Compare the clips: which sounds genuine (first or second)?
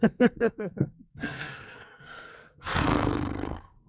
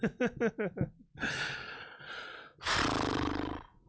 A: second